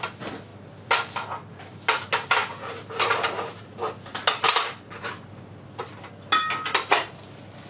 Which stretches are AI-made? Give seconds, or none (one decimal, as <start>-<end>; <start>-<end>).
2.4-3.8